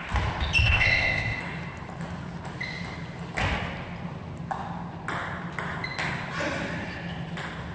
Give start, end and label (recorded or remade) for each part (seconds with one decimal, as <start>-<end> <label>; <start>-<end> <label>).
0.0-0.6 recorded; 0.6-1.4 remade; 1.4-7.7 recorded